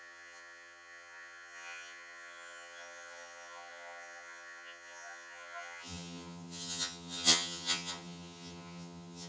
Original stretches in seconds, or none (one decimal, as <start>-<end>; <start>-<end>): none

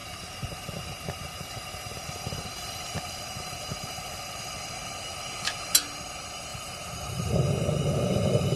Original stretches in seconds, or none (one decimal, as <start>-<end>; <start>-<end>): 4.5-6.5; 7.3-8.6

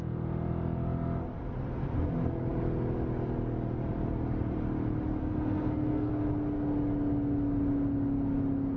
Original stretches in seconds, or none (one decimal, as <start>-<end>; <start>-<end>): 0.0-5.2; 6.1-8.8

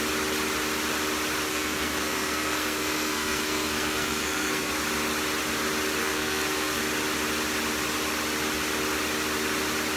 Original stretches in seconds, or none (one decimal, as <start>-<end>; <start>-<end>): 0.0-1.5; 4.7-6.0; 6.8-10.0

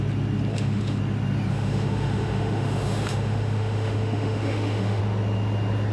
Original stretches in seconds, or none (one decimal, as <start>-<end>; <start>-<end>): 0.0-0.5; 1.0-1.5; 5.0-5.9

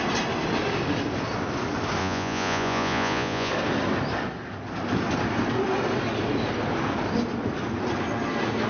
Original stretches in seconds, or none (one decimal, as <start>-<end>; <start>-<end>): 0.0-2.0; 3.5-8.7

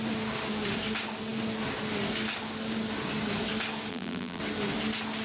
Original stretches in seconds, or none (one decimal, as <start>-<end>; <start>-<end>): 0.0-3.9; 4.4-5.2